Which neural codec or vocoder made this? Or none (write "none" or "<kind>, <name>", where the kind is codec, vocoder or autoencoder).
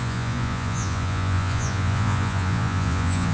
vocoder, Vocos